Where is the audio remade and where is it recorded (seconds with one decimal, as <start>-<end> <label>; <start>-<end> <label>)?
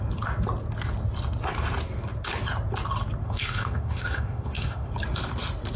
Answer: 0.0-3.2 recorded; 3.2-4.9 remade; 4.9-5.8 recorded